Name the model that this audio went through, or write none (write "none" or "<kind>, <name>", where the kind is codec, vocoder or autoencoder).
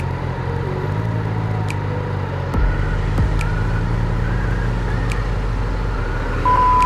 none